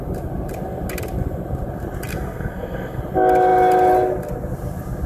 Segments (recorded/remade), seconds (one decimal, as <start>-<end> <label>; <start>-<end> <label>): 0.0-2.1 recorded; 2.1-3.0 remade; 3.0-5.1 recorded

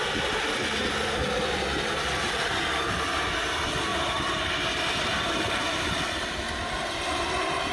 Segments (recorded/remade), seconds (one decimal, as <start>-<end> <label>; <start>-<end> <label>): 0.0-3.9 recorded; 3.9-5.4 remade; 5.4-7.7 recorded